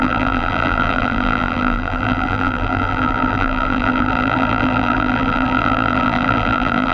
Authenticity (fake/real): fake